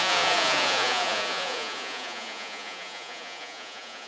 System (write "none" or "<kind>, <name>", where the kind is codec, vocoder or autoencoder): vocoder, Vocos